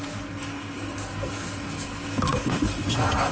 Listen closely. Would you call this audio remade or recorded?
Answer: remade